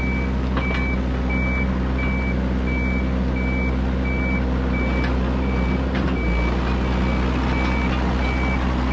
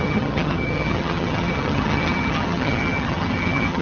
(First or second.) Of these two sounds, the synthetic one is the second